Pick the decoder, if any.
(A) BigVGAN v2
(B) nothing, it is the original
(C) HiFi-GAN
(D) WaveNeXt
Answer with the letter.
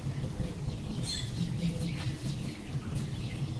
B